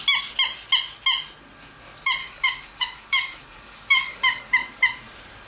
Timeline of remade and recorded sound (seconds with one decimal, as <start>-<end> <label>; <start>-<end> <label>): 0.0-2.2 recorded; 2.2-4.5 remade; 4.5-5.5 recorded